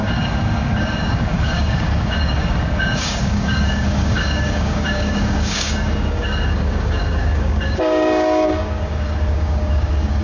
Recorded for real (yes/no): no